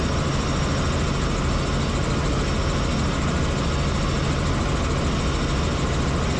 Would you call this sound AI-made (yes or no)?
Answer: no